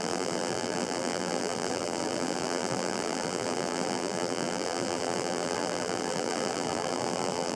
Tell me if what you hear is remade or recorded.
remade